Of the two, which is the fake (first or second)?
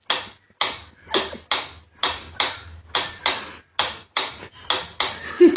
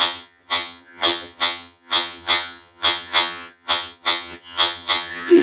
second